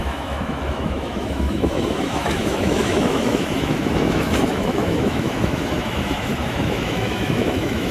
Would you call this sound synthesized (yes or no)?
yes